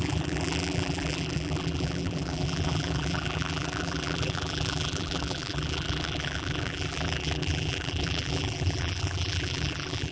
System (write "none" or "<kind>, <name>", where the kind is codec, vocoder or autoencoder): vocoder, BigVGAN v2